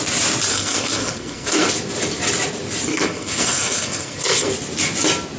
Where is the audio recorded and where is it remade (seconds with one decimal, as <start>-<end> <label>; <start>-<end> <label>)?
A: 0.0-0.5 recorded; 0.5-1.7 remade; 1.7-2.9 recorded; 2.9-4.5 remade; 4.5-5.4 recorded

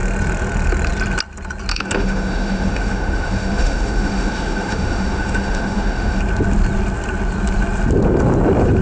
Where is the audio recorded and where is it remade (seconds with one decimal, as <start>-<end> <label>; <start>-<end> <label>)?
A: 0.0-1.7 recorded; 1.7-6.2 remade; 6.2-8.8 recorded

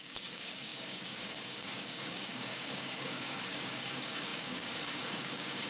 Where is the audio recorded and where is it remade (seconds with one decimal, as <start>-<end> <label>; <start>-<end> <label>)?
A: 0.0-5.7 remade

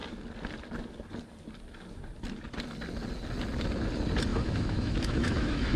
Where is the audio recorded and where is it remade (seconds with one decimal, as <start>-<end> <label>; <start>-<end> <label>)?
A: 0.0-4.3 recorded; 4.3-5.8 remade

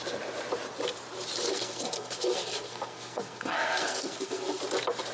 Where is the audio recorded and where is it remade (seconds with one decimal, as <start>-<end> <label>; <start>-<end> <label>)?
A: 0.0-1.5 recorded; 1.5-4.6 remade; 4.6-5.1 recorded

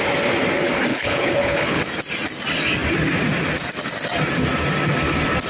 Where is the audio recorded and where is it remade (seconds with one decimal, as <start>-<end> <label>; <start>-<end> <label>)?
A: 0.0-0.9 recorded; 0.9-1.8 remade; 1.8-5.5 recorded